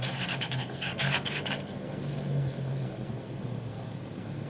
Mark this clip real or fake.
fake